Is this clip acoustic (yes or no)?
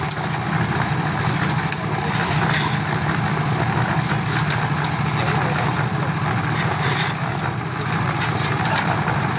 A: yes